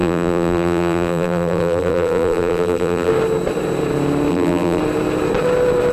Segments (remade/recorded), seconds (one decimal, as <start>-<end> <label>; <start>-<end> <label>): 0.0-3.1 remade; 3.1-4.3 recorded; 4.3-4.8 remade; 4.8-5.9 recorded